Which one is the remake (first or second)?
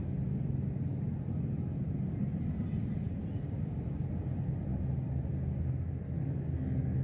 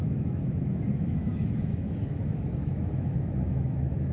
second